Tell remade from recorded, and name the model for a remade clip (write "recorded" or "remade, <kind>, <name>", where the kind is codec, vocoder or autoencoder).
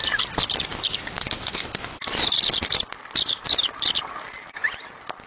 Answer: recorded